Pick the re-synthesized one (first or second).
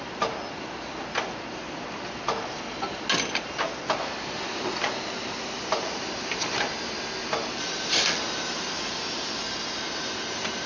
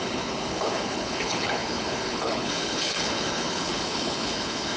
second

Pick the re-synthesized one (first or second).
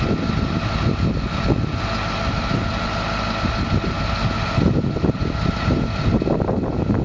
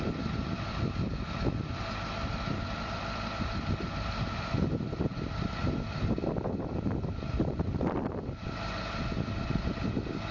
second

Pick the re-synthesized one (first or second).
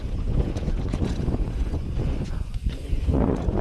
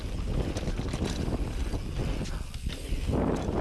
first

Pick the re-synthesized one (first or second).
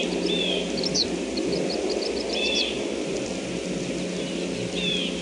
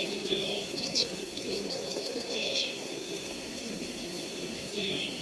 second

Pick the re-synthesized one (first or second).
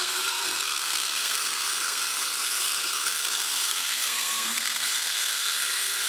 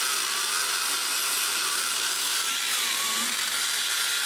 first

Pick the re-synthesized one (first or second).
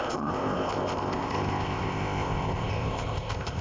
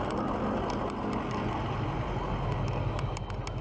first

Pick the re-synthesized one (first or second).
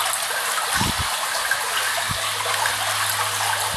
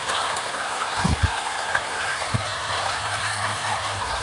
second